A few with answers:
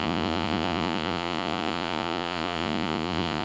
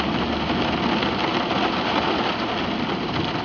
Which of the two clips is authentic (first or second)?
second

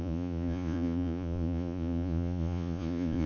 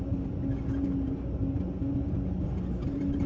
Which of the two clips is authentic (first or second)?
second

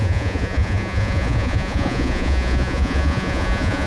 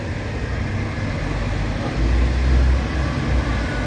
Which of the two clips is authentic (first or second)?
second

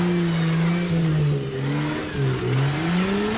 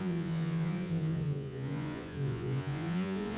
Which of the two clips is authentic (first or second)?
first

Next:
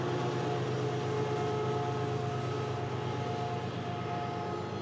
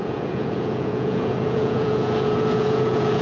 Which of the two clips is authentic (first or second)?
first